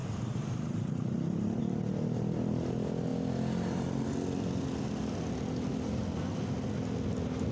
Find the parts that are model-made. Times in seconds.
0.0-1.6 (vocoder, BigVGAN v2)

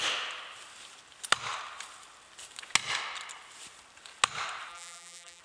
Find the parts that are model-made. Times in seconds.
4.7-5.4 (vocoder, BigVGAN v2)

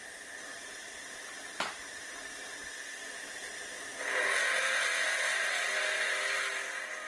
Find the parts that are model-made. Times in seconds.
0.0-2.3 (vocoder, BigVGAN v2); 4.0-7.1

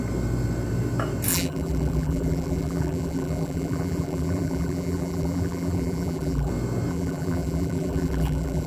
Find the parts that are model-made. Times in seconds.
1.3-6.5 (vocoder, BigVGAN v2); 6.9-8.7

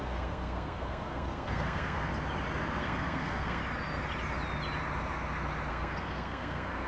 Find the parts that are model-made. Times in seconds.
0.0-2.1 (codec, SNAC); 2.8-3.6; 5.7-6.9

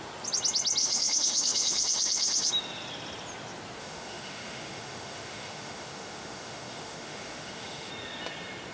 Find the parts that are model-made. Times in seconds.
0.8-2.5 (autoencoder, DAC-VAE); 3.8-7.9

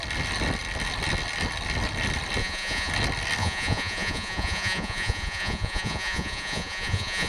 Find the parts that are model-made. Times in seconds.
2.4-2.9 (vocoder, Vocos); 3.4-7.3

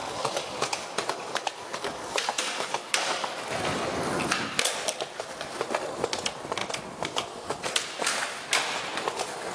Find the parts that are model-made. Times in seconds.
0.0-3.3 (codec, DAC)